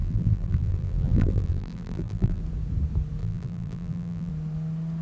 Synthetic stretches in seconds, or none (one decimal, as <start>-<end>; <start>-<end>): 0.0-2.4; 3.2-4.3